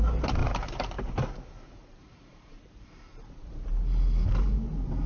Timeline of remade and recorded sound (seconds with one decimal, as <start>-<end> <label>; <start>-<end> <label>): 0.0-0.4 recorded; 0.4-3.5 remade; 3.5-5.1 recorded